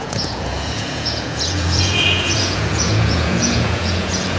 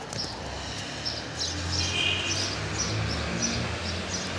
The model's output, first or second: first